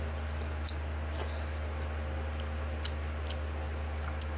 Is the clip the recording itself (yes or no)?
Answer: yes